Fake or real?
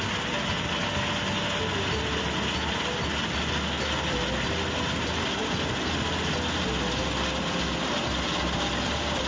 real